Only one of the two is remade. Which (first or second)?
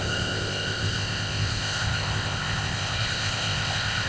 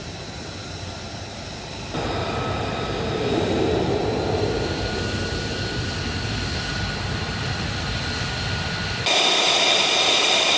first